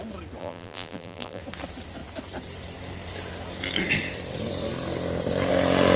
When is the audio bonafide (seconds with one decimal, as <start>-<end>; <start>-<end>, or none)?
0.0-0.4; 1.4-6.0